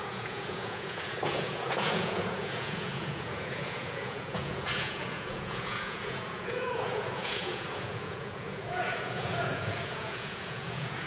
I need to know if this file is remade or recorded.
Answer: remade